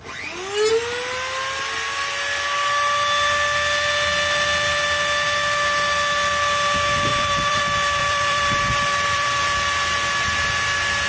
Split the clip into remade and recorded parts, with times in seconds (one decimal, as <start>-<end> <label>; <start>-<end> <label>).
0.0-7.1 recorded; 7.1-7.6 remade; 7.6-8.0 recorded; 8.0-10.4 remade; 10.4-11.1 recorded

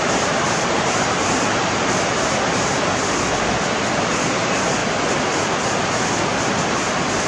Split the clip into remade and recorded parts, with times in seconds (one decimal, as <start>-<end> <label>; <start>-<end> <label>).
0.0-3.0 remade; 3.0-4.2 recorded; 4.2-4.8 remade; 4.8-6.5 recorded; 6.5-7.3 remade

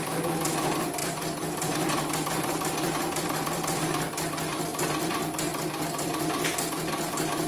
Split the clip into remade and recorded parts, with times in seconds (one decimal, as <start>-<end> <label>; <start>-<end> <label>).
0.0-1.0 recorded; 1.0-3.8 remade; 3.8-4.7 recorded; 4.7-6.7 remade; 6.7-7.5 recorded

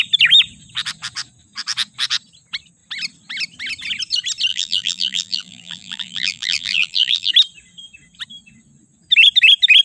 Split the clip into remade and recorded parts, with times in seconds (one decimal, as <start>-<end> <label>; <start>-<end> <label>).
0.0-4.5 recorded; 4.5-7.3 remade; 7.3-9.8 recorded

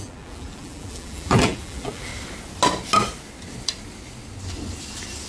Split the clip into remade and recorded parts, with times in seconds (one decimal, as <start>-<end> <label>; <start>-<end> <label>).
0.0-2.1 remade; 2.1-5.3 recorded

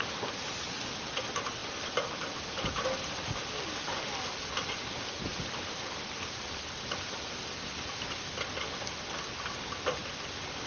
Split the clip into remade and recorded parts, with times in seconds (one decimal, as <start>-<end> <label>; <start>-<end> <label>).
0.0-5.3 recorded; 5.3-8.5 remade; 8.5-10.0 recorded; 10.0-10.7 remade